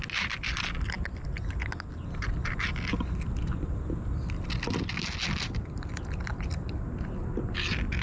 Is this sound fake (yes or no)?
no